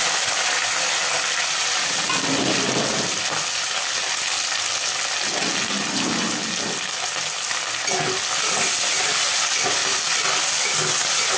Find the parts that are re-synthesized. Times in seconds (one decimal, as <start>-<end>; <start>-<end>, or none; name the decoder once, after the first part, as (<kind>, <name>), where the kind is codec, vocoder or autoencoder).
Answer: 9.8-10.4 (vocoder, BigVGAN v2)